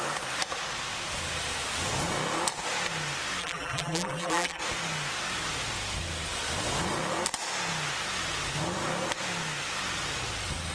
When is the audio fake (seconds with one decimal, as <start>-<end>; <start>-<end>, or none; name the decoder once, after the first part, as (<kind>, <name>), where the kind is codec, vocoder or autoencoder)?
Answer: 3.4-4.6 (vocoder, BigVGAN v2)